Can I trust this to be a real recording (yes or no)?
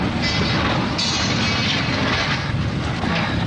yes